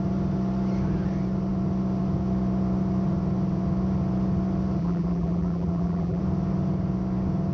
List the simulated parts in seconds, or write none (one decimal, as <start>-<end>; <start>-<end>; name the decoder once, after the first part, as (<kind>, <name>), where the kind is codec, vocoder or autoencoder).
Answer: 4.8-6.2 (vocoder, BigVGAN v2)